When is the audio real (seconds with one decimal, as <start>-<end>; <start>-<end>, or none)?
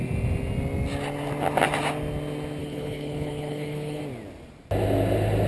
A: 0.0-2.6; 4.0-5.5